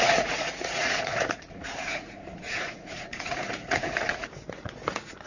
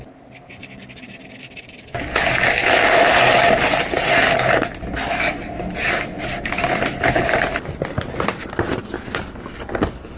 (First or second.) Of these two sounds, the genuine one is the second